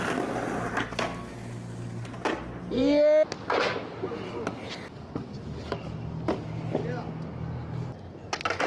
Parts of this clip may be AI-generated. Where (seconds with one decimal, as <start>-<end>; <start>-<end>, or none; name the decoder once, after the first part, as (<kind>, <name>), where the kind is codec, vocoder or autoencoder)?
none